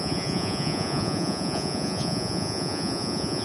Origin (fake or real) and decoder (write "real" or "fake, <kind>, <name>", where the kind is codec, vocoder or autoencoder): fake, vocoder, Vocos